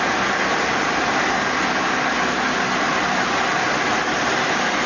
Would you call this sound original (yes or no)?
yes